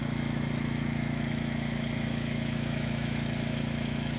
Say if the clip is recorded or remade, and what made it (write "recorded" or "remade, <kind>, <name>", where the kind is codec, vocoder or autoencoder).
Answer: remade, autoencoder, DAC-VAE